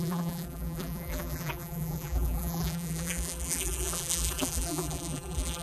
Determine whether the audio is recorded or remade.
remade